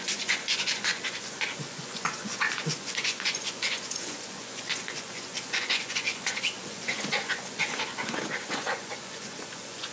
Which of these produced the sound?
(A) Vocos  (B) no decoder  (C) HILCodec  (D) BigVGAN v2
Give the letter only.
A